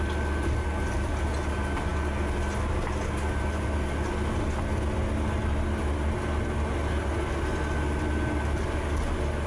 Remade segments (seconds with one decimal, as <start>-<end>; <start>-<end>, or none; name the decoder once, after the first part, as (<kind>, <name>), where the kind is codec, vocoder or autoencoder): none